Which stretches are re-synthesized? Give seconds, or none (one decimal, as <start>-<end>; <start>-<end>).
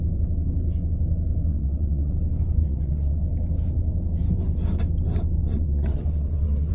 1.5-2.1; 2.6-3.2; 5.4-6.7